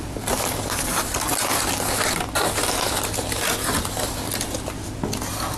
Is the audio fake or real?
real